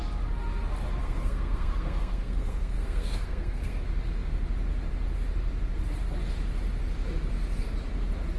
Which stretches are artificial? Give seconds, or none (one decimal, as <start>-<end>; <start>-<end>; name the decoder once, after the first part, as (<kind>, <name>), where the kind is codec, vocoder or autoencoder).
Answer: 1.0-3.8 (codec, SNAC)